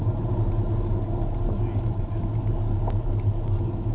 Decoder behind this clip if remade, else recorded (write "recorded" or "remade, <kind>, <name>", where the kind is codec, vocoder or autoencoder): recorded